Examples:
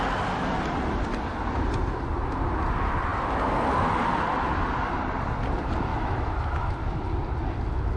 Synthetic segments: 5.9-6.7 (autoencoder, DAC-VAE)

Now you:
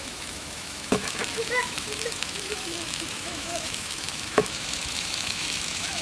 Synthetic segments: 0.0-6.0 (autoencoder, DAC-VAE)

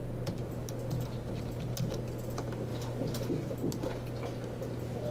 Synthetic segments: none

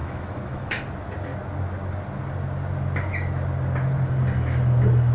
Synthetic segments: 0.0-0.8 (autoencoder, DAC-VAE)